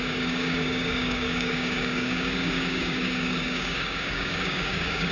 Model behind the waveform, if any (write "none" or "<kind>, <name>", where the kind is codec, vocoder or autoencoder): codec, DAC